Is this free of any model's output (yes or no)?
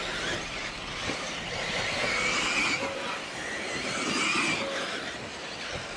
yes